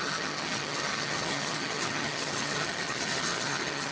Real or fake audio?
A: fake